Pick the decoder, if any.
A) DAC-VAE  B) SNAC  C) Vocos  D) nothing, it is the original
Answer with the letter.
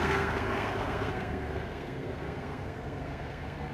B